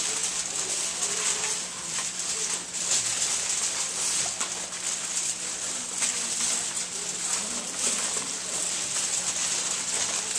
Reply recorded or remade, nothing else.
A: recorded